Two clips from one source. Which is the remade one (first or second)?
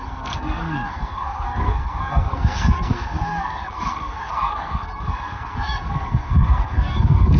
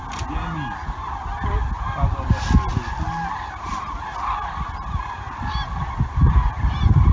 first